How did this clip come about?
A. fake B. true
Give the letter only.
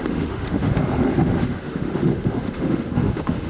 A